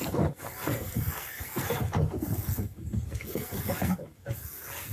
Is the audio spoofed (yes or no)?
yes